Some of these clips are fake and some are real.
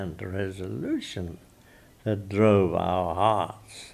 real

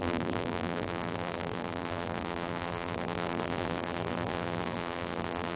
fake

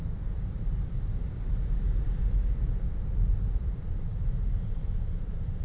fake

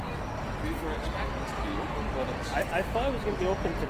real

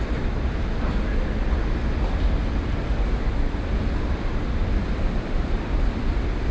fake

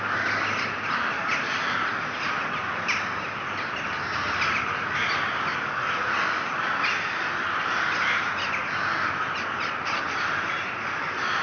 real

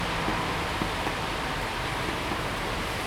fake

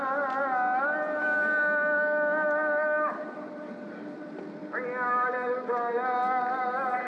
real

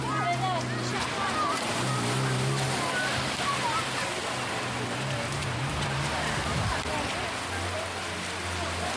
real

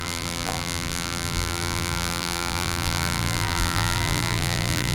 fake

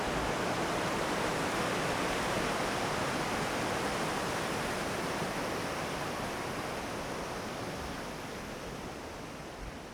real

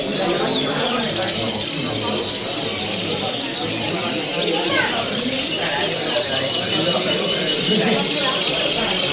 fake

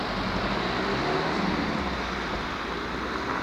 real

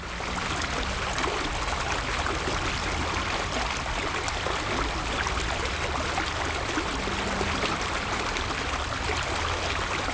real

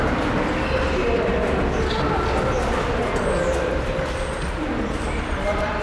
real